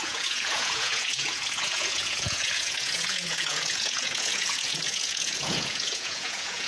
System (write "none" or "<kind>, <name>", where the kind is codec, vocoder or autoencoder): vocoder, Vocos